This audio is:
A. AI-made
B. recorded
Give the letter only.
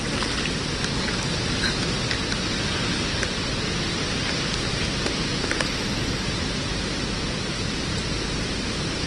B